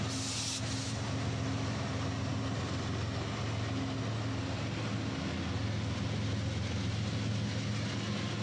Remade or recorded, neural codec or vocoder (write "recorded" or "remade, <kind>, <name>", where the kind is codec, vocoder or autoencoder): recorded